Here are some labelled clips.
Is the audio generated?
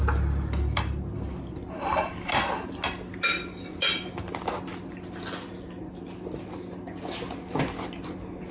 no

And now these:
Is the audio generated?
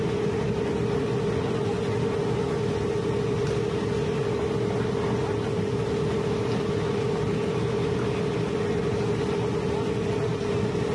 no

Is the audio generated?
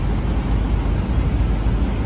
no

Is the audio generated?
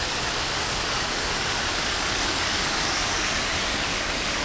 yes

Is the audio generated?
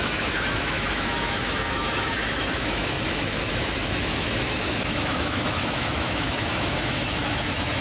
yes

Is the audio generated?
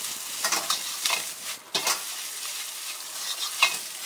no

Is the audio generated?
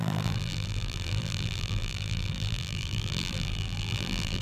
yes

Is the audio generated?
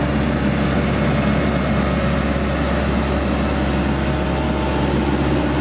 no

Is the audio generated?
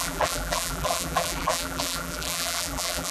yes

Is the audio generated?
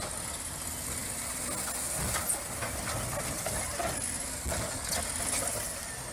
no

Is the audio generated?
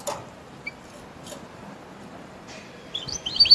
no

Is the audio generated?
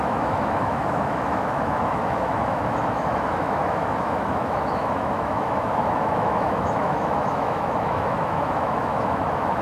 yes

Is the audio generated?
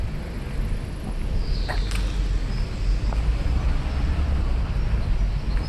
no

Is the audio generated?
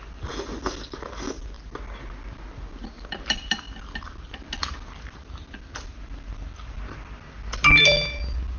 no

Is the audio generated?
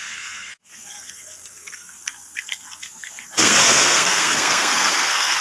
yes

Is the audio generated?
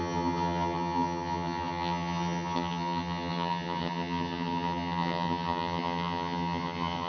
yes